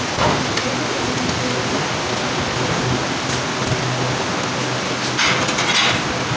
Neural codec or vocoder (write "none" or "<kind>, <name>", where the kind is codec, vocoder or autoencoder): none